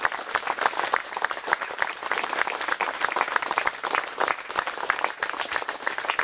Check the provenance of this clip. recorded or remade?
recorded